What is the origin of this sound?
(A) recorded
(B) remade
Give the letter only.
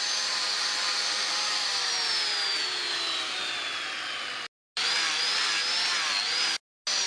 A